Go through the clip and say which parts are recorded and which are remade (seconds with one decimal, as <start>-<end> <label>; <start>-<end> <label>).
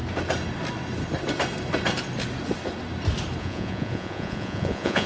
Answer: 0.0-3.4 recorded; 3.4-5.1 remade